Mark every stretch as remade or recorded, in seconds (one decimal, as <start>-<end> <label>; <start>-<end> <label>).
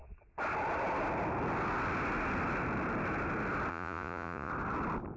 0.0-3.7 recorded; 3.7-4.5 remade; 4.5-5.2 recorded